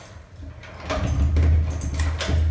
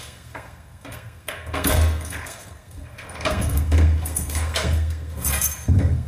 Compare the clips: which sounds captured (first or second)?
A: first